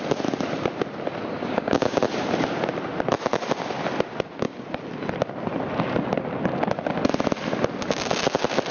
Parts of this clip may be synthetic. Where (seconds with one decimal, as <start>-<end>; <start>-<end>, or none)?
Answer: 1.4-2.0